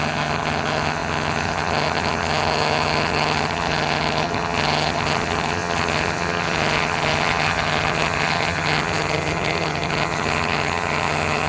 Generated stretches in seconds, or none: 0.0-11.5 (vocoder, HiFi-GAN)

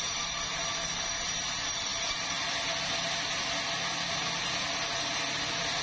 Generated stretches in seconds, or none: none

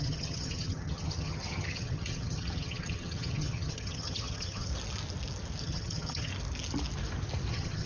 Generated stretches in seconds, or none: 0.0-4.7 (vocoder, HiFi-GAN); 5.6-6.3; 7.5-7.9

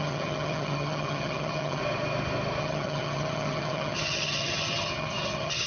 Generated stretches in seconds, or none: 0.0-1.8 (vocoder, HiFi-GAN); 2.6-5.7

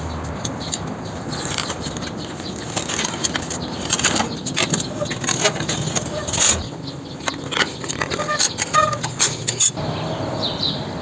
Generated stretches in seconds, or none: none

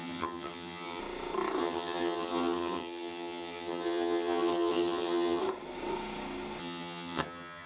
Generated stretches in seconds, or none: 0.0-1.0 (vocoder, HiFi-GAN); 1.6-5.4; 6.6-7.7

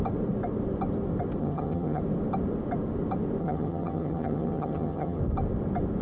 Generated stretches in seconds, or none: 1.4-2.0 (vocoder, HiFi-GAN); 3.4-5.2